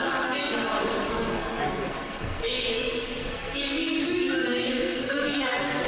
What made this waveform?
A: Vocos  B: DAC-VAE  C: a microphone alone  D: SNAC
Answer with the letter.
D